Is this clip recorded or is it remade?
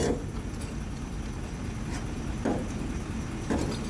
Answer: recorded